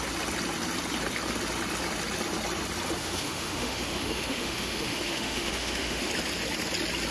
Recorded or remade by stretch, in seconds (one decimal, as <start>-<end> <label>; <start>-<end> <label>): 0.0-3.0 recorded; 3.0-6.1 remade; 6.1-7.1 recorded

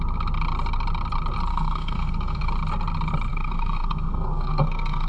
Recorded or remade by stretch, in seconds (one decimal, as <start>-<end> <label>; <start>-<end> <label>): 0.0-1.5 recorded; 1.5-2.5 remade; 2.5-3.3 recorded; 3.3-5.1 remade

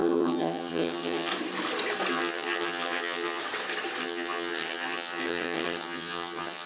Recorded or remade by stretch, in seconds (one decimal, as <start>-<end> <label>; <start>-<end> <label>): 0.0-1.3 remade; 1.3-2.1 recorded; 2.1-3.4 remade; 3.4-4.0 recorded; 4.0-6.7 remade

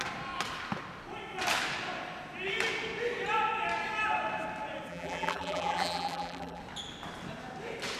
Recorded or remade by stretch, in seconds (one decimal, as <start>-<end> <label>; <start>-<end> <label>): 0.0-4.9 recorded; 4.9-6.6 remade; 6.6-8.0 recorded